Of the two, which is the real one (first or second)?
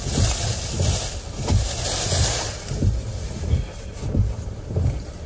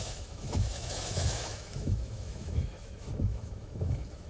first